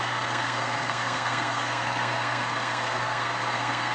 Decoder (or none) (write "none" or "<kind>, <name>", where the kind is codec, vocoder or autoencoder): codec, SNAC